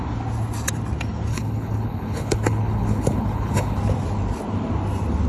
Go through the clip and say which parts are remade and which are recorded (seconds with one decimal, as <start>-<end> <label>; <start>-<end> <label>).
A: 0.0-1.3 recorded; 1.3-3.8 remade; 3.8-5.3 recorded